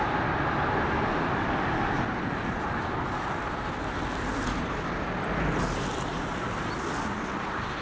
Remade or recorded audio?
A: recorded